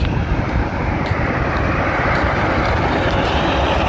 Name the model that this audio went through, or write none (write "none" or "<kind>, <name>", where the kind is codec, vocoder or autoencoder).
none